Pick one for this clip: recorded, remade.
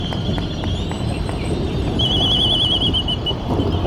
remade